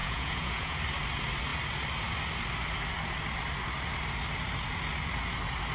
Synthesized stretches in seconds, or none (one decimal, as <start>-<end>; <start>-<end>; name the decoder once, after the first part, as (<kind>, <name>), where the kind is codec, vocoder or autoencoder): 0.0-0.8 (vocoder, Vocos)